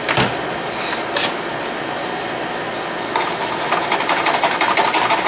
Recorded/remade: recorded